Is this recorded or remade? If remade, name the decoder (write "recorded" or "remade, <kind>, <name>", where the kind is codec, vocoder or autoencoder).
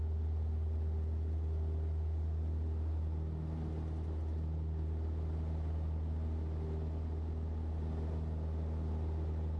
recorded